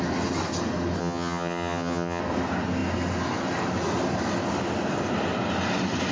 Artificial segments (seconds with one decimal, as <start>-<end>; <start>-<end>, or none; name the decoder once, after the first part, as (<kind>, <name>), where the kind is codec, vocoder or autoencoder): 1.0-2.2 (vocoder, HiFi-GAN)